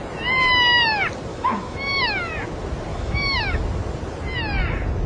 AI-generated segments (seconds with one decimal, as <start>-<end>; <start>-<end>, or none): 1.3-2.3; 2.9-3.6